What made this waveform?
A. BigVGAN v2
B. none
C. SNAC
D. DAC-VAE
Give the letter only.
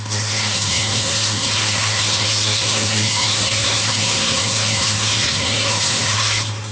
C